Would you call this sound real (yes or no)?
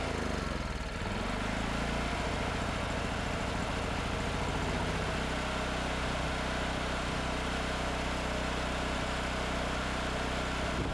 yes